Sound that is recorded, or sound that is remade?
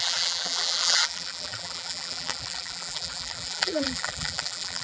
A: remade